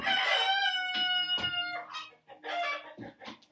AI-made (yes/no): no